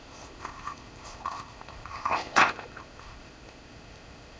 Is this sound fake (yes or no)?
yes